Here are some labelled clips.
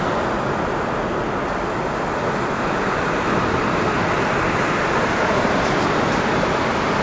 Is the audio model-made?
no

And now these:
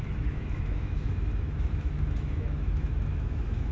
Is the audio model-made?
yes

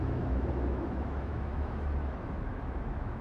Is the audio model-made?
yes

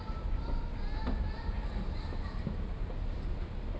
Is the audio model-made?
no